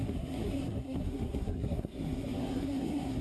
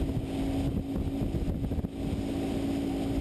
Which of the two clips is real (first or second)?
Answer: second